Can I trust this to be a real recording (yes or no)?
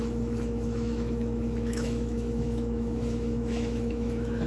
no